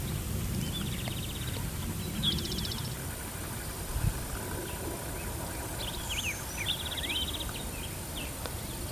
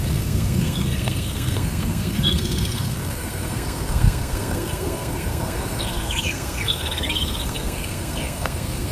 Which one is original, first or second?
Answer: first